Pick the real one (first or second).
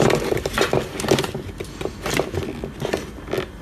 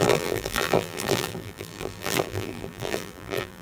first